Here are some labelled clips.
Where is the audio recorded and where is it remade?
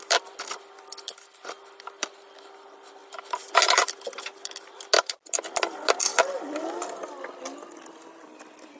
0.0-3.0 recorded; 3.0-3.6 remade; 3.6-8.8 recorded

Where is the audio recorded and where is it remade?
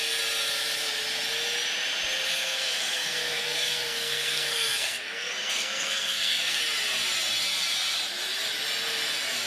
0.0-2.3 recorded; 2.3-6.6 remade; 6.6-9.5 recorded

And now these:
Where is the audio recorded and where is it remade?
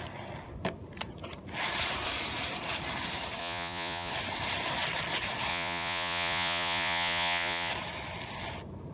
0.0-3.4 recorded; 3.4-4.1 remade; 4.1-5.5 recorded; 5.5-7.7 remade; 7.7-8.9 recorded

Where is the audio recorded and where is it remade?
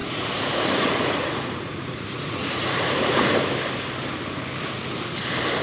0.0-3.4 remade; 3.4-5.6 recorded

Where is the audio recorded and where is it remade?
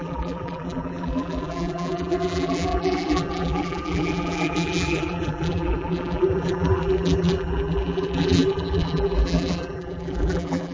0.0-10.7 remade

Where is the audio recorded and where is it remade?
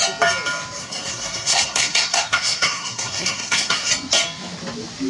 0.0-0.8 recorded; 0.8-3.9 remade; 3.9-5.1 recorded